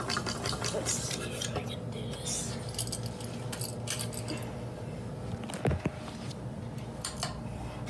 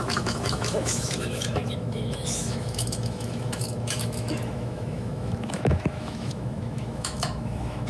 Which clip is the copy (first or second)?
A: second